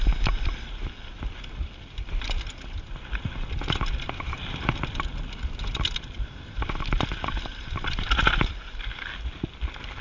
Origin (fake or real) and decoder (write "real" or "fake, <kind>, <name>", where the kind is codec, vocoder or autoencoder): real